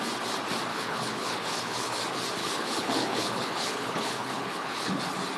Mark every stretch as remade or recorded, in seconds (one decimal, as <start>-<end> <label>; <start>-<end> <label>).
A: 0.0-0.7 recorded; 0.7-2.0 remade; 2.0-2.4 recorded; 2.4-5.0 remade; 5.0-5.4 recorded

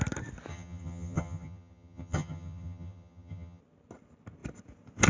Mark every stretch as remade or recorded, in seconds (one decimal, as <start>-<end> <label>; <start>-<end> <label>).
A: 0.0-0.5 recorded; 0.5-3.6 remade; 3.6-5.1 recorded

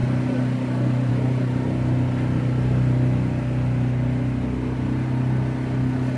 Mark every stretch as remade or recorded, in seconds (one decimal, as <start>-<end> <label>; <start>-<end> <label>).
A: 0.0-6.2 recorded

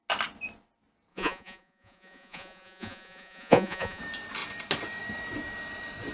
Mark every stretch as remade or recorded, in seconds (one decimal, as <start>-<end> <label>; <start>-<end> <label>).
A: 0.0-1.1 recorded; 1.1-4.0 remade; 4.0-6.1 recorded

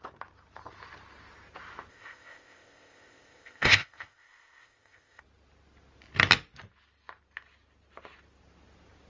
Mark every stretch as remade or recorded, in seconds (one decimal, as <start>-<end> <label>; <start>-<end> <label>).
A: 0.0-1.9 recorded; 1.9-5.2 remade; 5.2-9.1 recorded

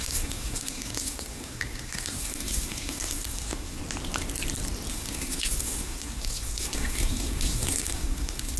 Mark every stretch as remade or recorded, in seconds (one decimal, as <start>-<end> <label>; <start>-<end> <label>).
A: 0.0-3.8 remade; 3.8-4.9 recorded; 4.9-8.6 remade